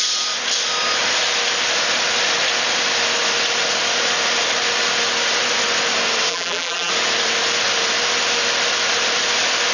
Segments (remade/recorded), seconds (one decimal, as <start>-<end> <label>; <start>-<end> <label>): 0.0-6.3 recorded; 6.3-6.9 remade; 6.9-9.7 recorded